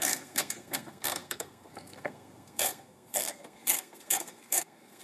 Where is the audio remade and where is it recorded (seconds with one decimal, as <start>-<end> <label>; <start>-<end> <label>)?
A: 0.0-5.0 remade